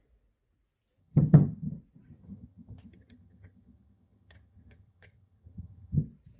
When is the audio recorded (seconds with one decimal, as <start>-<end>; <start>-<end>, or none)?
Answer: 0.0-1.0; 1.7-2.2; 6.0-6.4